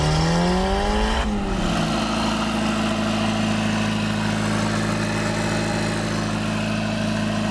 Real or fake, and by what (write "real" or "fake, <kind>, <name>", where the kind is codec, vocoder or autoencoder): real